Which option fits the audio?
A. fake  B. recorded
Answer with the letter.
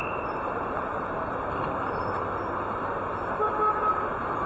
B